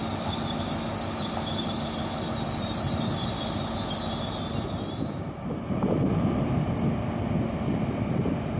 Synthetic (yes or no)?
no